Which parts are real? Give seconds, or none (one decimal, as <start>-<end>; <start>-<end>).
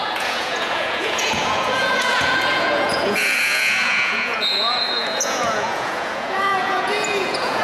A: none